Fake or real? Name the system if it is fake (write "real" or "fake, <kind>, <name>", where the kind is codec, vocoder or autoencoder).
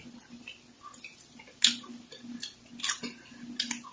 real